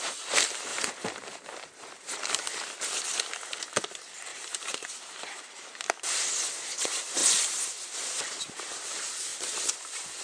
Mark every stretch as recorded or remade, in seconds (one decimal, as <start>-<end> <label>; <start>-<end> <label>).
0.0-0.7 recorded; 0.7-2.3 remade; 2.3-4.3 recorded; 4.3-5.0 remade; 5.0-7.2 recorded; 7.2-8.4 remade; 8.4-9.3 recorded; 9.3-10.2 remade